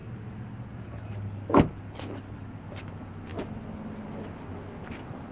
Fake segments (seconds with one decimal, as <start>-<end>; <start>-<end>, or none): none